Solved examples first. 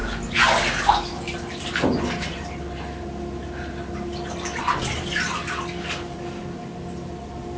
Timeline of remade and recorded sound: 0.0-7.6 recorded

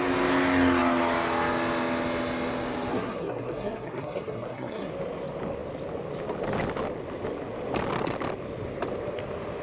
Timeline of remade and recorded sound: 0.0-2.9 recorded; 2.9-4.9 remade; 4.9-9.6 recorded

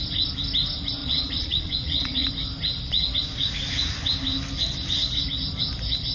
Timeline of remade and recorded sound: 0.0-1.0 recorded; 1.0-2.3 remade; 2.3-6.1 recorded

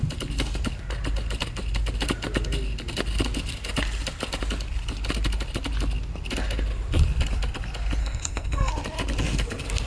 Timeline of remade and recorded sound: 0.0-8.0 recorded; 8.0-8.7 remade; 8.7-9.9 recorded